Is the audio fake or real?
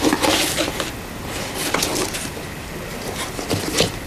real